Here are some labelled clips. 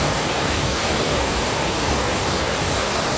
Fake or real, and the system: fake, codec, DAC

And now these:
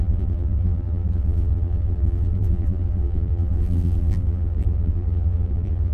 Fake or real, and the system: fake, vocoder, BigVGAN v2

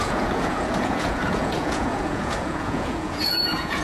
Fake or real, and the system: fake, vocoder, Vocos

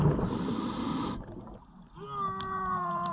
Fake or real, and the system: real